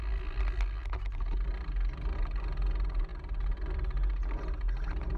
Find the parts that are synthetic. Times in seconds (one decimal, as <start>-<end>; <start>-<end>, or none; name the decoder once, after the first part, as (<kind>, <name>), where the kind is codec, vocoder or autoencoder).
none